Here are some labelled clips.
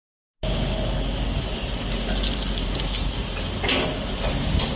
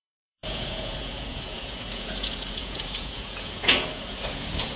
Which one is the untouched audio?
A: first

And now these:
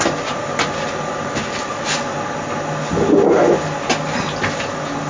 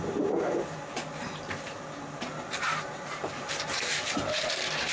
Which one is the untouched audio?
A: first